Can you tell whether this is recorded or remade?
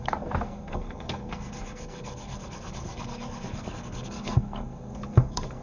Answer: remade